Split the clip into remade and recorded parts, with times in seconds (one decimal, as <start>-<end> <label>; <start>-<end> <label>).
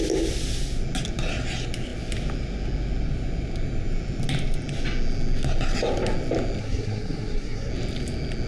0.0-6.6 recorded; 6.6-7.7 remade; 7.7-8.5 recorded